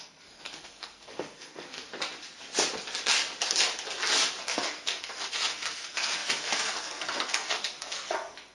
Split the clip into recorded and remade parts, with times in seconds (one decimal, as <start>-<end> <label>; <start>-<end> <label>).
0.0-1.9 remade; 1.9-4.4 recorded; 4.4-8.5 remade